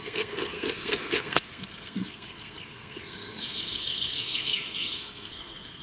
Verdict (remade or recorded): remade